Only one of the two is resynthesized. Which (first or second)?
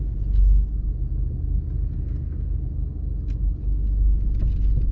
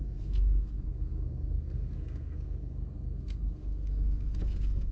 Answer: second